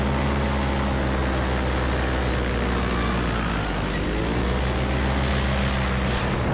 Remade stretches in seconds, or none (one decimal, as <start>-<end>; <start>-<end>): none

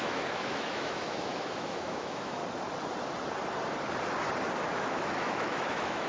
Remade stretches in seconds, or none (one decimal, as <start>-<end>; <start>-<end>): 0.0-2.4; 4.7-6.1